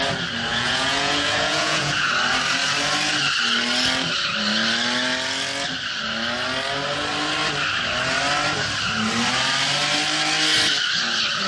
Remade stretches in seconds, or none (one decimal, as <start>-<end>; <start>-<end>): 0.5-2.1